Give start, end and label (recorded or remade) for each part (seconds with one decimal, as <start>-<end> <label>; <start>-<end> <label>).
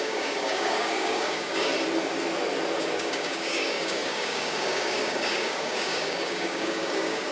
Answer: 0.0-1.7 remade; 1.7-2.8 recorded; 2.8-7.3 remade